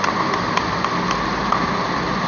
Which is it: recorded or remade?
recorded